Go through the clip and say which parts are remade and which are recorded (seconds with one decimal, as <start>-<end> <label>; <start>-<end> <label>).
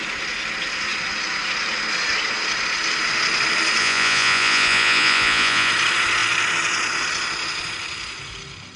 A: 0.0-3.8 recorded; 3.8-5.7 remade; 5.7-8.8 recorded